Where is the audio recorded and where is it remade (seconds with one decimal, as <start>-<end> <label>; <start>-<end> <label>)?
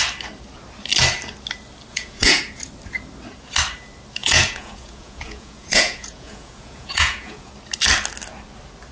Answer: 0.0-1.9 recorded; 1.9-2.4 remade; 2.4-4.2 recorded; 4.2-7.5 remade; 7.5-8.9 recorded